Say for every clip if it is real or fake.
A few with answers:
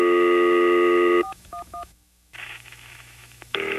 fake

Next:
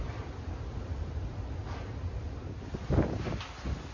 real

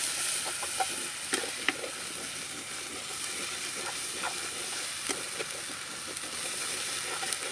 real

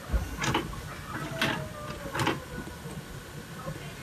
real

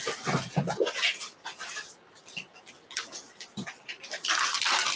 real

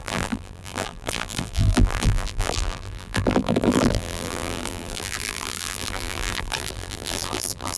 fake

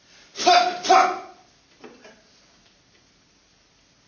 real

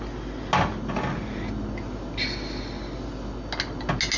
real